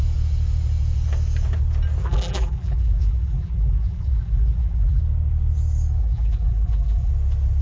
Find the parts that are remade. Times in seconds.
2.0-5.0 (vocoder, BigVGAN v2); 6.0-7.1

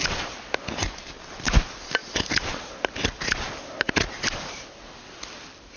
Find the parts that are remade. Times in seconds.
none